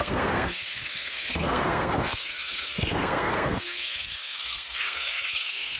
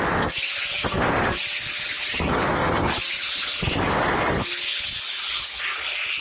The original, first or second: second